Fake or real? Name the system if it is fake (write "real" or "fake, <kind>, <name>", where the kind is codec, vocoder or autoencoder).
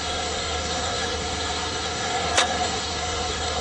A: fake, codec, SNAC